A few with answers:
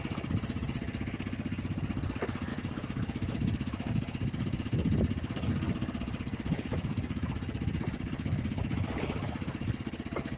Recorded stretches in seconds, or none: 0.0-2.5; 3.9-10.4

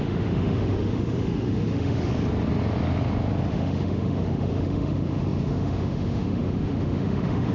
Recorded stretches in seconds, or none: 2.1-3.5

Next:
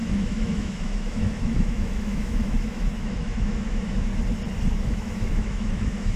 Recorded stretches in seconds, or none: 4.1-4.7

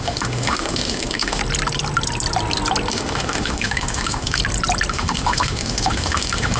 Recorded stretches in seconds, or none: 1.4-2.9; 4.4-4.9

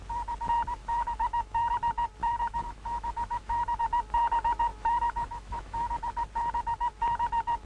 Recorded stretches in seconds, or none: 0.0-0.8; 1.7-2.2; 3.8-4.7; 5.9-7.7

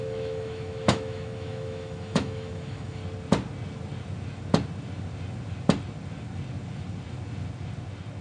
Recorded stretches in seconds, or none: 3.0-8.2